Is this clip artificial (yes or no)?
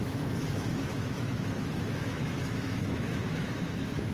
yes